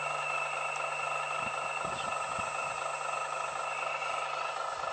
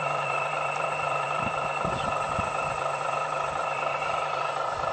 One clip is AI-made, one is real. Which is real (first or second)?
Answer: first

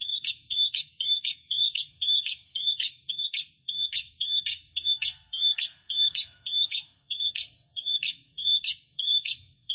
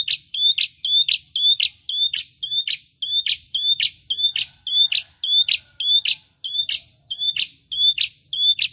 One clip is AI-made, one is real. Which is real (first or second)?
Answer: second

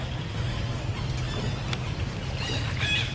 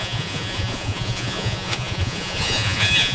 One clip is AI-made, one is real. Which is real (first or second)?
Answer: first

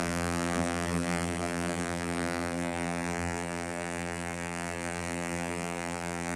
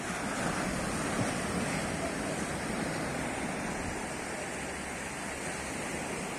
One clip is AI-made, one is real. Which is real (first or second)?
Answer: second